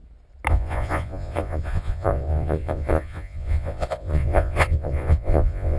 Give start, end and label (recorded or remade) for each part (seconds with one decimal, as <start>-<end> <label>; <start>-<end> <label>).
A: 0.0-0.5 recorded; 0.5-5.8 remade